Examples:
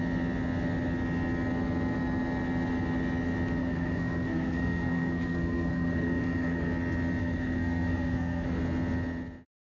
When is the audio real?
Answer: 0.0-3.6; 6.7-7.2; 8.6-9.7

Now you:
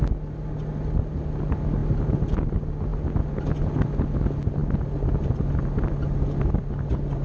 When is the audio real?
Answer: 0.0-7.2

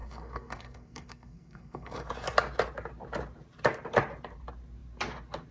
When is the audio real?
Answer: 2.1-5.5